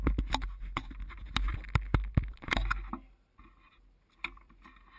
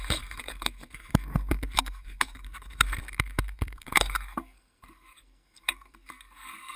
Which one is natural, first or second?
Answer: first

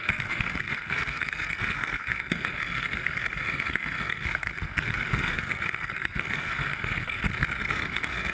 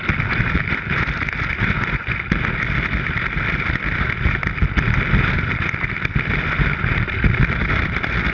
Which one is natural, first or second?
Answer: second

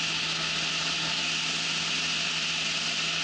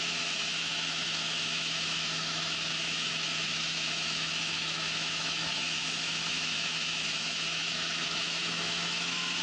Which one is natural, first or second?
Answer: first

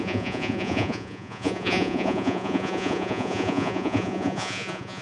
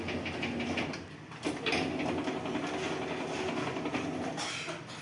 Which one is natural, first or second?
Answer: second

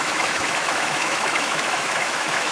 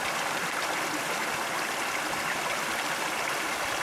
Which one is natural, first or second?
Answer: second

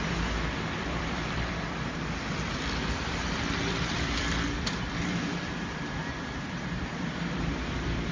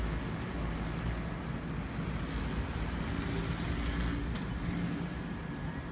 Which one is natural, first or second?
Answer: second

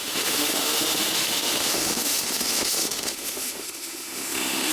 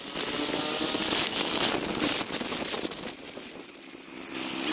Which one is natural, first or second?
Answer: second